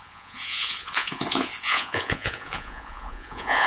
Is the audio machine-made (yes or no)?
yes